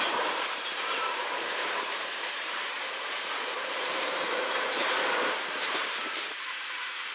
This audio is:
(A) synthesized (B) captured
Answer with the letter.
A